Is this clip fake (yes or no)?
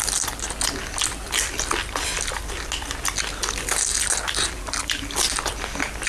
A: no